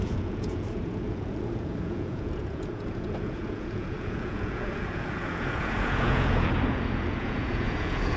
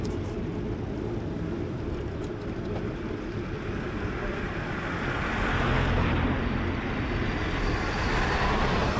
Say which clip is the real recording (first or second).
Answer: second